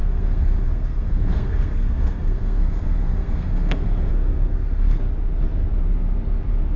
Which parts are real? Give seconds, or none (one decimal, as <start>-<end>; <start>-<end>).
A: 5.0-6.8